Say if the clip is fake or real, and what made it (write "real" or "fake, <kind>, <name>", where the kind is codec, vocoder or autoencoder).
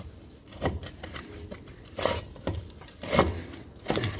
real